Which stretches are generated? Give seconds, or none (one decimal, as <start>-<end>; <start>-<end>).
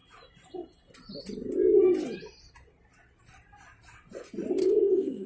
4.6-5.3